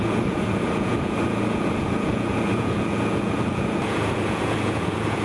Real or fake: fake